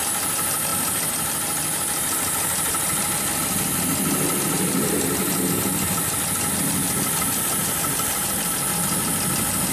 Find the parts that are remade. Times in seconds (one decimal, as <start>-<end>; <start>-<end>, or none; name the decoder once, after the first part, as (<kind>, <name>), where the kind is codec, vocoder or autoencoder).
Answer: 7.6-8.2 (vocoder, BigVGAN v2)